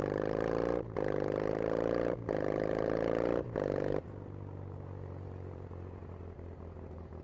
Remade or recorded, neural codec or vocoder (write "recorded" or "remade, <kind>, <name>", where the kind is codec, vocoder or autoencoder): remade, vocoder, BigVGAN v2